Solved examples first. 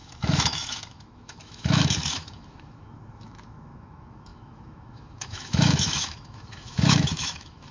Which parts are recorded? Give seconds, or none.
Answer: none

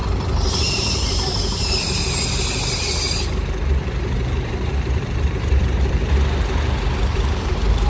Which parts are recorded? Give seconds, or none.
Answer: 1.6-3.8; 6.1-7.1

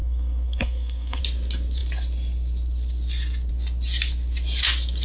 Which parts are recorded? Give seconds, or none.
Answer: 1.2-5.0

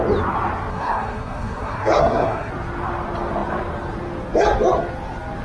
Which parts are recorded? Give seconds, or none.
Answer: 0.0-0.7; 2.5-5.4

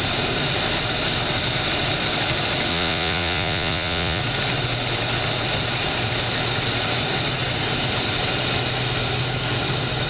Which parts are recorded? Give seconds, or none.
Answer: 0.0-2.7; 4.2-10.1

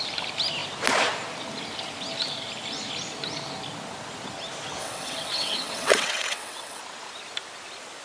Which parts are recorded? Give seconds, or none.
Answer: 0.0-4.8; 6.8-8.0

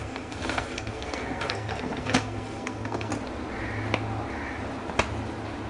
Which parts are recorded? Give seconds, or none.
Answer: 3.1-5.7

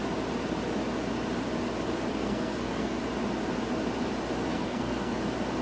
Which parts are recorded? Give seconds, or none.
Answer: 0.0-2.1; 3.0-4.5; 5.1-5.6